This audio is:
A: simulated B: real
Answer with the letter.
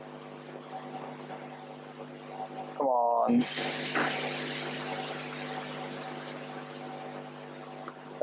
B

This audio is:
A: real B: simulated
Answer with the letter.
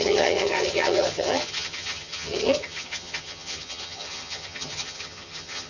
B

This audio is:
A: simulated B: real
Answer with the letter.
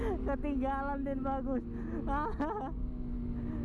B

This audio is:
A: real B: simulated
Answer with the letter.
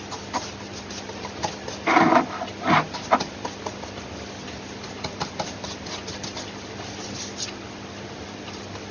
A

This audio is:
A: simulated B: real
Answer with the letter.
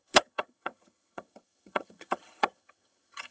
A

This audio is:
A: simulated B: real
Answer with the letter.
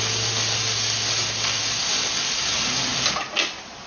B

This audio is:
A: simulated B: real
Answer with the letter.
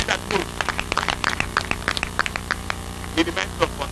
A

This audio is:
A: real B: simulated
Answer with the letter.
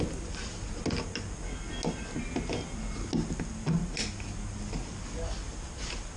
A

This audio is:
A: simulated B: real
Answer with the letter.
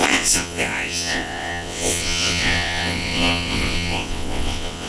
A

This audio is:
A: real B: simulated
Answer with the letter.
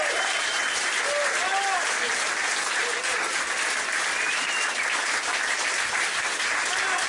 A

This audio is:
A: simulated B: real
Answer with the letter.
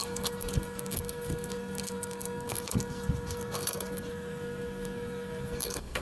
A